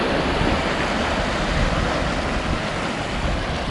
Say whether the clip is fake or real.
real